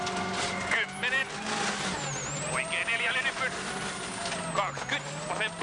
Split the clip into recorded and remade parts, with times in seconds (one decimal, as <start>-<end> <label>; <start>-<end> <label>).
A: 0.0-5.6 recorded

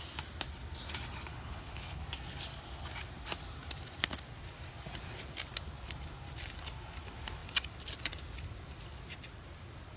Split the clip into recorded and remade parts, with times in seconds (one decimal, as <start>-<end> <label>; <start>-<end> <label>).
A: 0.0-1.3 recorded; 1.3-2.0 remade; 2.0-10.0 recorded

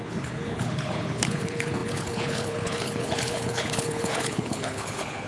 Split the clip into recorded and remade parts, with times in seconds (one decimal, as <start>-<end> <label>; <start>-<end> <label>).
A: 0.0-5.3 remade

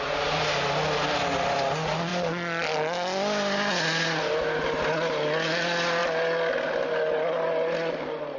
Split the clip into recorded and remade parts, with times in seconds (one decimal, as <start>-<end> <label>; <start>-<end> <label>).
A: 0.0-8.4 recorded

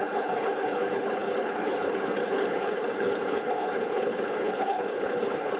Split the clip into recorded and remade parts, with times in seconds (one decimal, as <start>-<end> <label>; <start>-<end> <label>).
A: 0.0-5.6 remade